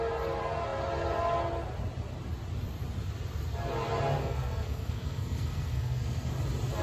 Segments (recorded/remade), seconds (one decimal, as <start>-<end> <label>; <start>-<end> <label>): 0.0-4.2 recorded; 4.2-6.3 remade; 6.3-6.8 recorded